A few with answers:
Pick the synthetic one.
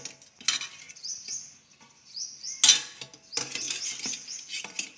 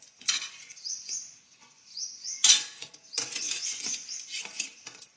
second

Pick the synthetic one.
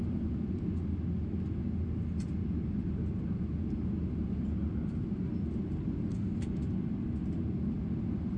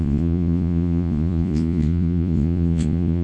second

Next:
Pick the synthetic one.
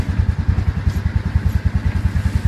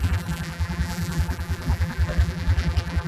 second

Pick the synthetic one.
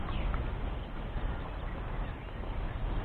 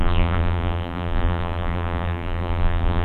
second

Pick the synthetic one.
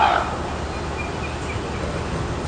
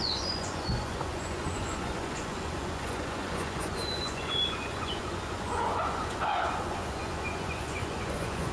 second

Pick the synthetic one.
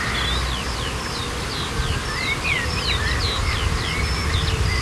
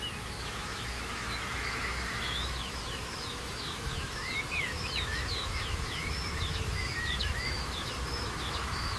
second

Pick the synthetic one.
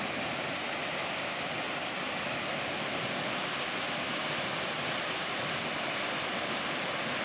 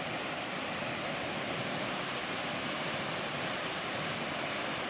second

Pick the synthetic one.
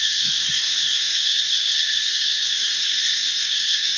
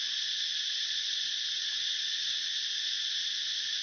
first